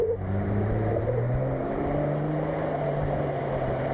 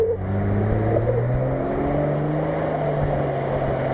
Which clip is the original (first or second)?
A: second